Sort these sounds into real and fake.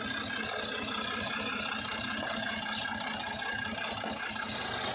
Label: real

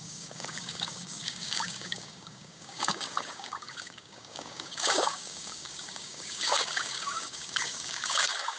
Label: fake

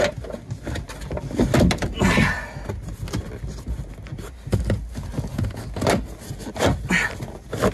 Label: real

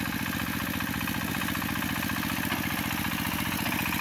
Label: real